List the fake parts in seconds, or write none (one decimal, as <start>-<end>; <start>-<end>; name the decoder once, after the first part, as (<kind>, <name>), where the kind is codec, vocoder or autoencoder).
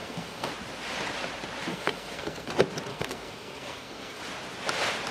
0.0-0.5 (codec, SNAC); 1.7-2.5; 2.9-4.2